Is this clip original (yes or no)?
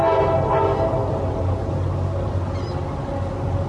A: yes